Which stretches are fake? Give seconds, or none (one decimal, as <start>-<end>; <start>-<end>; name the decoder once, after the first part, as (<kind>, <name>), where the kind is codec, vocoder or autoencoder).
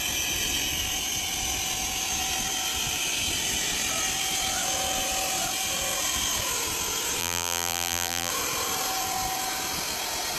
7.2-8.3 (vocoder, BigVGAN v2)